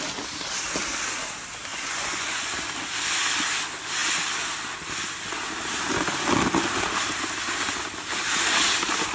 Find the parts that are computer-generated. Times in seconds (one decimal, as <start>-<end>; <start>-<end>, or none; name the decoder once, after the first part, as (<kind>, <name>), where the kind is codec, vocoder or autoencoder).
1.7-2.5 (vocoder, Vocos)